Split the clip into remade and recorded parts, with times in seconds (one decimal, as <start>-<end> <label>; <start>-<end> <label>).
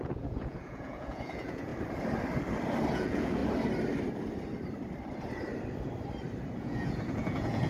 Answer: 0.0-1.7 remade; 1.7-2.9 recorded; 2.9-3.4 remade; 3.4-6.6 recorded; 6.6-7.7 remade